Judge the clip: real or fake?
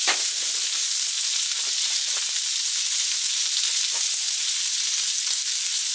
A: real